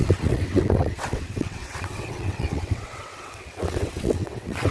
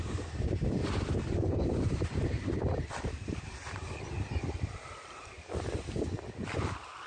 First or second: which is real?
second